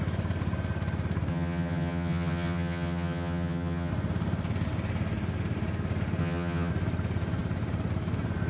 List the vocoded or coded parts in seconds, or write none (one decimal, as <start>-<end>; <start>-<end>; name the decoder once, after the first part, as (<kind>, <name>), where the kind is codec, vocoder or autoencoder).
1.3-3.9 (vocoder, HiFi-GAN); 6.2-6.7